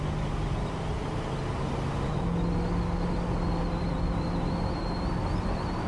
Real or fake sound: real